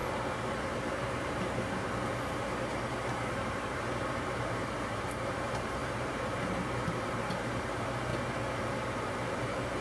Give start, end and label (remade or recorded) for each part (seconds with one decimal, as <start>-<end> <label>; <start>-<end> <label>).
0.0-9.8 remade